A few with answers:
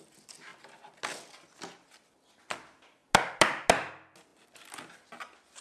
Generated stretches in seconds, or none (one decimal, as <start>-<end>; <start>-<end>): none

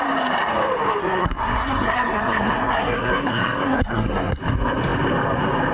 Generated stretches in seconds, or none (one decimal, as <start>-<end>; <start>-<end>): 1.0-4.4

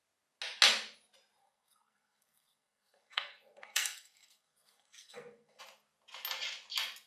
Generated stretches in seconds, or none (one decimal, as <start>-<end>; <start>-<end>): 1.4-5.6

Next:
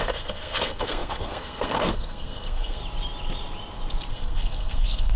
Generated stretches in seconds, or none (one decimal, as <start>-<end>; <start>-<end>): 0.0-2.8; 4.1-5.2